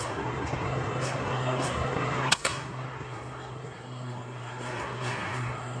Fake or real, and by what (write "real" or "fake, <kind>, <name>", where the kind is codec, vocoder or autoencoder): fake, codec, SNAC